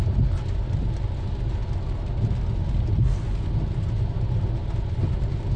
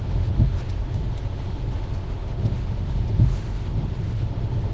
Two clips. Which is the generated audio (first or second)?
second